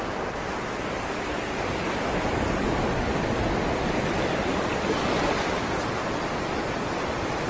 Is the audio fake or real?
fake